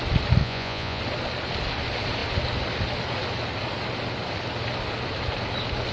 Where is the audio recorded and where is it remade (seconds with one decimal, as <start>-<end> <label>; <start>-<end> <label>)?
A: 0.0-0.4 recorded; 0.4-1.0 remade; 1.0-5.9 recorded